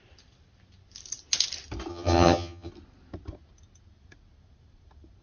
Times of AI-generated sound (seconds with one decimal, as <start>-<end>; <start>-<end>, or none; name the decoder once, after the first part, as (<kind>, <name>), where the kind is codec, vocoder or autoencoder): 1.9-2.7 (vocoder, HiFi-GAN)